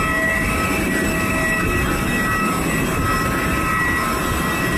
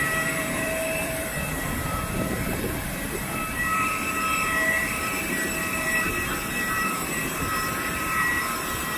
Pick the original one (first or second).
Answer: first